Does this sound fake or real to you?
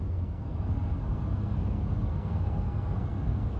fake